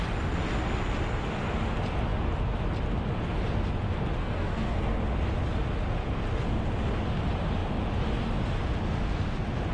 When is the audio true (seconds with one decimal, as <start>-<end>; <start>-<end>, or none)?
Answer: 0.0-4.2; 5.0-9.7